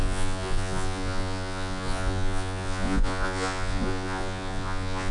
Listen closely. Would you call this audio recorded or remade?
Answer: remade